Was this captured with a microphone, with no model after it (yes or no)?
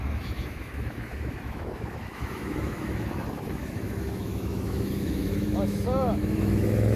no